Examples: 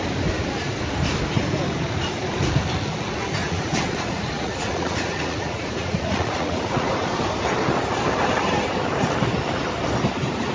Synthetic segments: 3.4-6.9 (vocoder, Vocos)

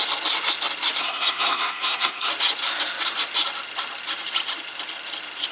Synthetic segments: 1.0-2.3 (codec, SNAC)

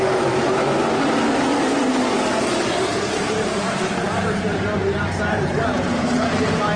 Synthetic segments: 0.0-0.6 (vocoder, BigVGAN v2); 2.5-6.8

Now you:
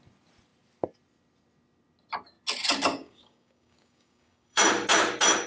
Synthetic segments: 3.0-4.6 (codec, DAC)